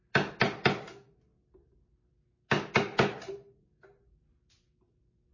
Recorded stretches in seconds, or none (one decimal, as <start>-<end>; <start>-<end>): 0.0-5.3

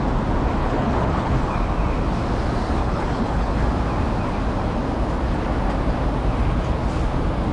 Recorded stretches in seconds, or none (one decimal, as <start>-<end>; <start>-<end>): 0.0-0.6; 1.6-2.8; 3.5-7.5

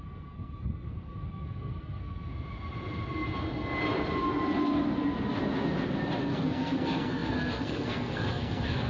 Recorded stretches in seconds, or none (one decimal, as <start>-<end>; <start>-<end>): 2.3-6.2

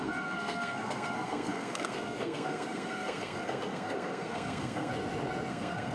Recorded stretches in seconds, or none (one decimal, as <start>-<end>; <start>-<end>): 4.9-5.5

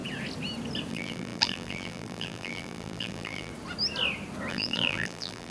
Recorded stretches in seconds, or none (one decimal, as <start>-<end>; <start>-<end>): 0.0-0.9; 3.5-4.5

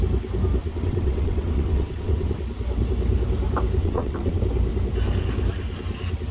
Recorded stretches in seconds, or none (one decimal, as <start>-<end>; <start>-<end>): 0.0-0.6; 2.4-3.8; 4.4-6.3

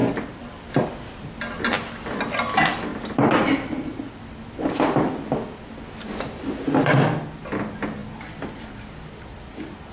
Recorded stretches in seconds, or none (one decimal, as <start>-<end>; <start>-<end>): 0.0-9.9

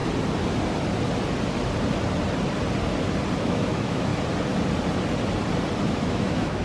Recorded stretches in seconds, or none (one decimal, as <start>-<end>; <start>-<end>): 0.0-3.4; 4.1-5.9